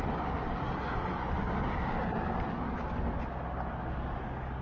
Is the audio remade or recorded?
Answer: recorded